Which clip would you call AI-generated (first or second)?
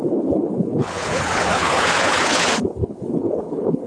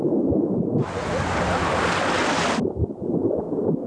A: first